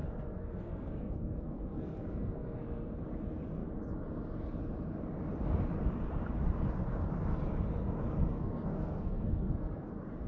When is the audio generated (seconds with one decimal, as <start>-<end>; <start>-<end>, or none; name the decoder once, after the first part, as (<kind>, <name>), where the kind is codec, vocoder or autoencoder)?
0.0-2.9 (codec, SNAC); 8.3-9.9